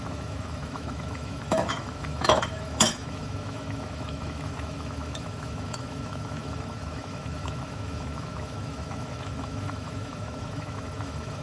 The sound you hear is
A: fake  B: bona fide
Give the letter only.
A